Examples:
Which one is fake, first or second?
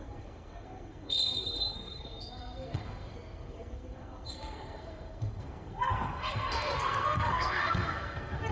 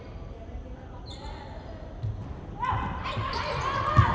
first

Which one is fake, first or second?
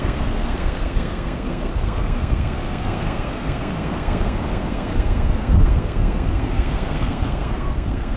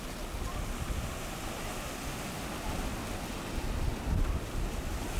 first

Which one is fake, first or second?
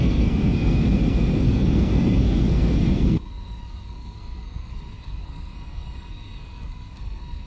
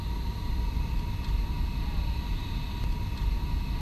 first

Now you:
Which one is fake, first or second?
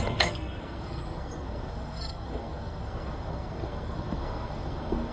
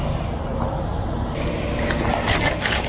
first